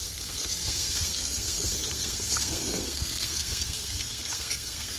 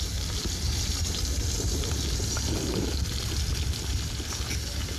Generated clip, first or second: first